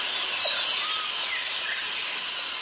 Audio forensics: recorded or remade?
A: recorded